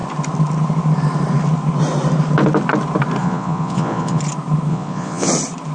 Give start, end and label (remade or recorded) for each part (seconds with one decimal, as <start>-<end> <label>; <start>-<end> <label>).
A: 0.0-3.2 recorded; 3.2-4.2 remade; 4.2-4.7 recorded; 4.7-5.3 remade; 5.3-5.7 recorded